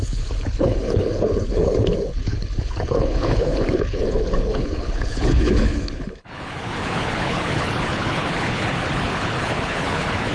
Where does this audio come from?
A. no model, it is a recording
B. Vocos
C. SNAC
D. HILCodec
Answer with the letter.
D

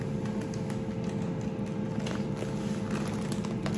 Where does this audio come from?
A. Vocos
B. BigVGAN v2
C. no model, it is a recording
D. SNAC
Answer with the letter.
C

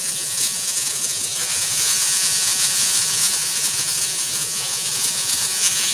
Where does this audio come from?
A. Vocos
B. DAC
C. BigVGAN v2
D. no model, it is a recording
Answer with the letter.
A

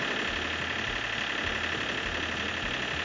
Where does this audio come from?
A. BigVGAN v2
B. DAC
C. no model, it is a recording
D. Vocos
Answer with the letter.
C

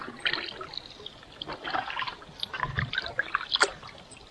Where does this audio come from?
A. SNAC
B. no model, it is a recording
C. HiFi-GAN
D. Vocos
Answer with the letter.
B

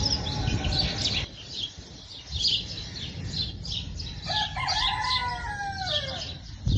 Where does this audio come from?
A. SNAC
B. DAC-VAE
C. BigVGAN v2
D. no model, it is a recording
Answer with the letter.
D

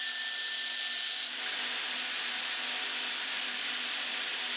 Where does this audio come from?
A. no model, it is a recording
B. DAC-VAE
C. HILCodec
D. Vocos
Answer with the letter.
A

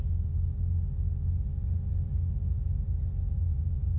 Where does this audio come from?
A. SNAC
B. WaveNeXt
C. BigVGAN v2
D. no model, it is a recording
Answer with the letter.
D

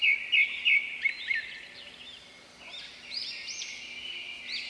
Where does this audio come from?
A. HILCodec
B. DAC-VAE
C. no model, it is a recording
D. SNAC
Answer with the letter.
C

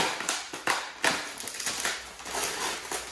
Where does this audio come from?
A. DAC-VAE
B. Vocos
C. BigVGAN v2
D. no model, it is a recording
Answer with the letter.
D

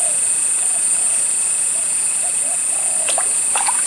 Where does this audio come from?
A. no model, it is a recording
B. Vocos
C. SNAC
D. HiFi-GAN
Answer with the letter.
B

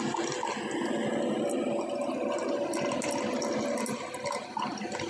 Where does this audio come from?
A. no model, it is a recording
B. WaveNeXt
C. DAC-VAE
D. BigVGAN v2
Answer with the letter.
A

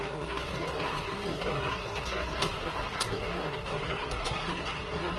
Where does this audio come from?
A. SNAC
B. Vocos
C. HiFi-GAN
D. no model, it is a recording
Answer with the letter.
A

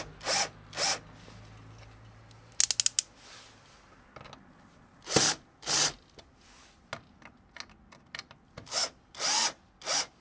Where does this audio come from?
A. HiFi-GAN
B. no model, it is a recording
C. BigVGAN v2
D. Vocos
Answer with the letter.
B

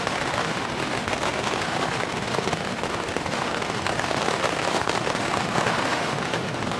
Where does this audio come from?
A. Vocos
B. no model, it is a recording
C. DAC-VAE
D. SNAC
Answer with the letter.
C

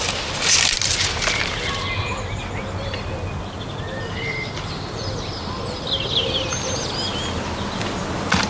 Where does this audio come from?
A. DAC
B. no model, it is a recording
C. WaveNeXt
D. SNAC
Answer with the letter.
B